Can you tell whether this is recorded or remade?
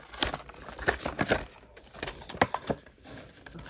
remade